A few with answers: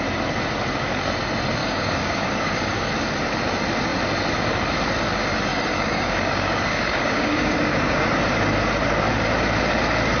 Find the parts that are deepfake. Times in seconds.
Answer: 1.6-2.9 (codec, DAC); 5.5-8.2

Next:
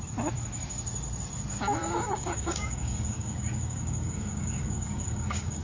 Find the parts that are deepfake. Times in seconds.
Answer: 1.8-5.6 (codec, DAC)

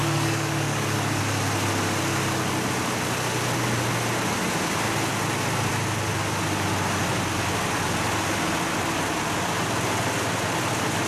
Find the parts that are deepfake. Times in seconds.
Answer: 0.0-1.2 (codec, DAC)

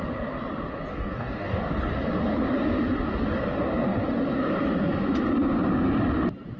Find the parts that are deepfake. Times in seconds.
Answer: 0.9-1.6 (codec, DAC)

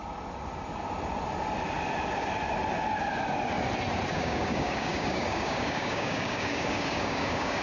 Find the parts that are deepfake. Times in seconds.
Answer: 4.1-7.6 (codec, DAC)

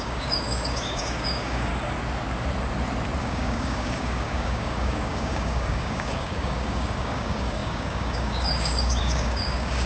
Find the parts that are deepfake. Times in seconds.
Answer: 0.0-1.7 (codec, DAC); 3.2-9.9

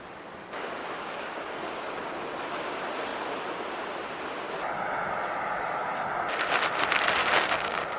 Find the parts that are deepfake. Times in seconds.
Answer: 0.8-2.0 (codec, DAC); 7.2-8.0